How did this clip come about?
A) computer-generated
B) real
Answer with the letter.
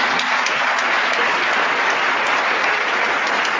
B